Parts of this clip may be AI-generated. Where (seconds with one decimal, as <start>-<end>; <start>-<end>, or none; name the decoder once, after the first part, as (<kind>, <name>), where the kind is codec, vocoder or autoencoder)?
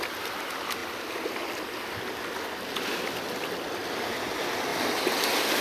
none